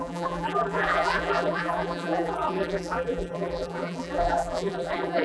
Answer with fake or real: fake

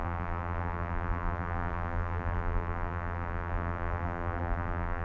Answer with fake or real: fake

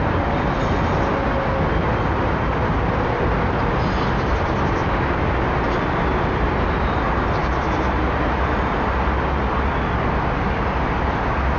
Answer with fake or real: real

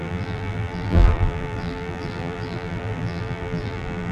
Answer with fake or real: fake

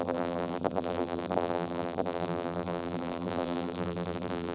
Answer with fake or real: fake